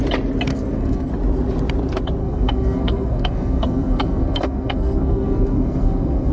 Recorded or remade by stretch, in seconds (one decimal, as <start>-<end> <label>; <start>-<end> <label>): 0.0-0.5 recorded; 0.5-1.1 remade; 1.1-2.2 recorded; 2.2-6.3 remade